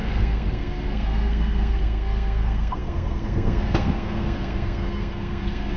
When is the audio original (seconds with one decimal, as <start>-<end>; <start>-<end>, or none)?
none